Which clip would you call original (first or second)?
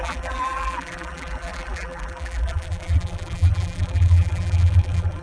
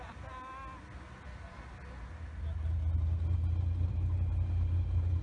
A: second